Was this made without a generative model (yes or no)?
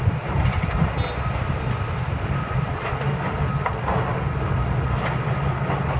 yes